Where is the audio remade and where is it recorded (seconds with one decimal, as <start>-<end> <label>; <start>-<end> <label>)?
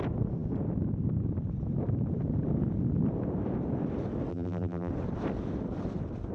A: 0.0-4.3 recorded; 4.3-4.9 remade; 4.9-6.3 recorded